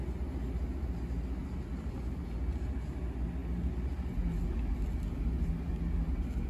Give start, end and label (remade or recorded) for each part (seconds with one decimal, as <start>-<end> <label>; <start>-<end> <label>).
0.0-6.5 recorded